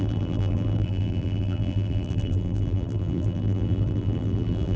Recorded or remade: remade